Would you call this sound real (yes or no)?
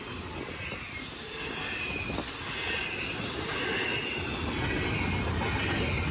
yes